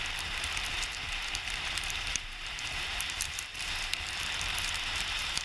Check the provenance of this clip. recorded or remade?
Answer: remade